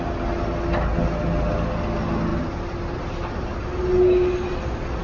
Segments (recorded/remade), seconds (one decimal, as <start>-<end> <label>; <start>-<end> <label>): 0.0-5.0 recorded